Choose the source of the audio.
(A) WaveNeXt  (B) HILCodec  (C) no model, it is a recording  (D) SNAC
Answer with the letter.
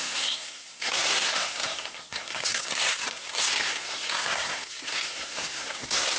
D